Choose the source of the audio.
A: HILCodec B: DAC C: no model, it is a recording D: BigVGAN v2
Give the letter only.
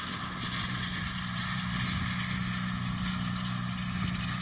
C